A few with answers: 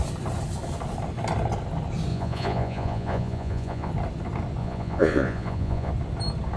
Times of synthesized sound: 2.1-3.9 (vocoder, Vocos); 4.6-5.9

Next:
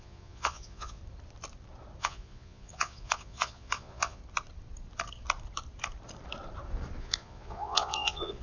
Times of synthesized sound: 0.0-1.0 (vocoder, Vocos); 2.0-4.2; 7.0-8.4